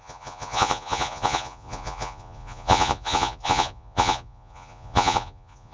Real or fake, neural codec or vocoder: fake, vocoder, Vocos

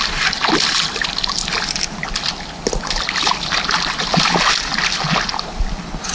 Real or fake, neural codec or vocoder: real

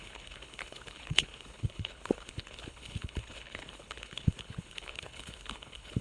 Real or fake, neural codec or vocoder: fake, codec, HILCodec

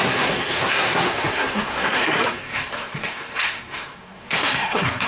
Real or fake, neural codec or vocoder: fake, codec, SNAC